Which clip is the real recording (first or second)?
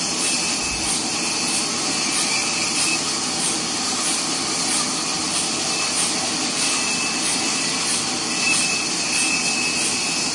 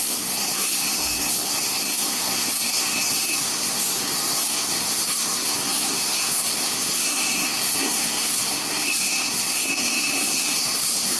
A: first